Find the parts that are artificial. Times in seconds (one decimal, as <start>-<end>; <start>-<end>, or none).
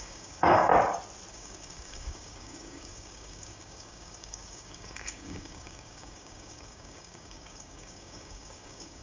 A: 0.0-0.7; 1.3-9.0